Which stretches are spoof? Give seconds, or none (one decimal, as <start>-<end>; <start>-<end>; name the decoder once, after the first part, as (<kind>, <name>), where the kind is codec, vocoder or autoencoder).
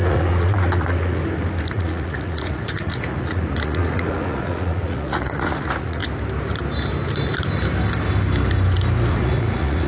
0.0-1.2 (vocoder, Vocos); 1.7-6.0; 9.1-9.9